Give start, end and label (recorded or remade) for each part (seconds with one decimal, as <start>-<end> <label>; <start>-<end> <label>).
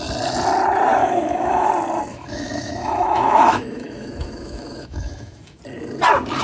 0.0-1.0 recorded; 1.0-1.7 remade; 1.7-2.1 recorded; 2.1-5.6 remade; 5.6-6.4 recorded